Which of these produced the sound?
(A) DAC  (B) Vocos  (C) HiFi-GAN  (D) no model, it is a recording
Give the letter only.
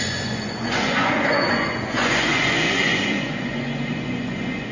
B